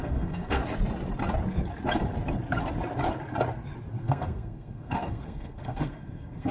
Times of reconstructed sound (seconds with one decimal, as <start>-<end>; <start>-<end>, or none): 0.0-0.6; 4.0-6.5